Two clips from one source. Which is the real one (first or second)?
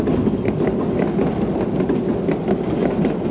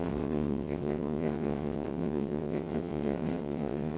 first